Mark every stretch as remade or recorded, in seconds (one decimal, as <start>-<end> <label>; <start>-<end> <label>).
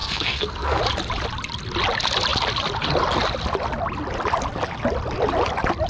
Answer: 0.0-0.8 remade; 0.8-5.9 recorded